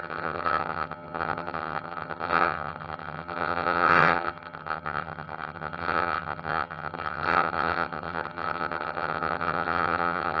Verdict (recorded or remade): remade